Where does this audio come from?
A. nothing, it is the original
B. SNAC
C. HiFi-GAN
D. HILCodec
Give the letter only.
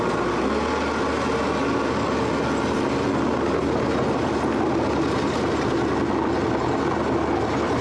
A